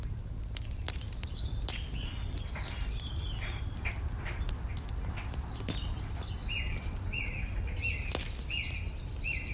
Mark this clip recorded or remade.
recorded